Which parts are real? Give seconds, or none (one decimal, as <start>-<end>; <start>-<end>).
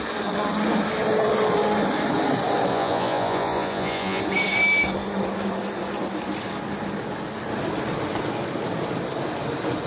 0.0-2.7; 4.2-9.9